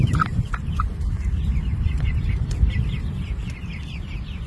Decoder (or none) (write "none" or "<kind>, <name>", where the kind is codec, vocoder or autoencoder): vocoder, BigVGAN v2